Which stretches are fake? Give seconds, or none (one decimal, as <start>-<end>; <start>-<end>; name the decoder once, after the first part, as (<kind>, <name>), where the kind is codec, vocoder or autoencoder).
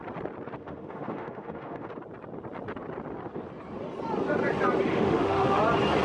0.6-1.9 (autoencoder, DAC-VAE); 4.9-5.6